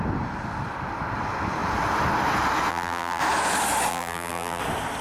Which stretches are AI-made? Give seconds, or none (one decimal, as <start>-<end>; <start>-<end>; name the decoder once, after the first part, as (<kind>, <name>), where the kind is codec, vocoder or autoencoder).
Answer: 2.7-3.2 (vocoder, BigVGAN v2); 3.9-4.6